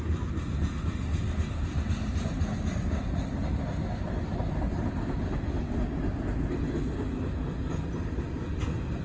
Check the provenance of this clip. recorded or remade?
recorded